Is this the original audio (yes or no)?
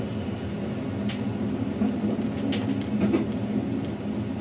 yes